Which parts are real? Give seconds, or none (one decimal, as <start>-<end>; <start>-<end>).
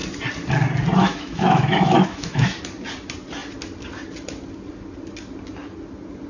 0.0-1.0; 2.6-6.3